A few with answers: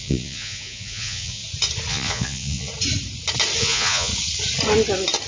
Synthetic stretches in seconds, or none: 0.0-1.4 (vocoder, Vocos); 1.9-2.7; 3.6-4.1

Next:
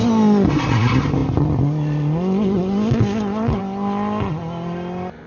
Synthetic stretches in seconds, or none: none

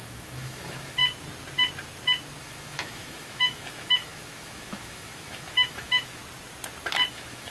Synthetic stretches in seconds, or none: 0.0-1.0 (autoencoder, DAC-VAE); 2.4-6.2; 7.1-7.5

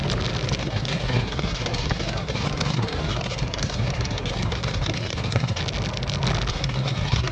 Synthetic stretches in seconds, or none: 0.6-5.6 (codec, SNAC); 6.5-7.3

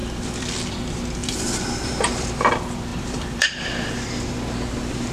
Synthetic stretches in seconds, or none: 0.0-0.7 (vocoder, BigVGAN v2); 1.2-2.5; 2.9-4.0

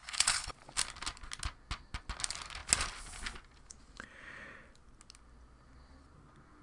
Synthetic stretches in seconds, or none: 0.0-0.5 (codec, HILCodec)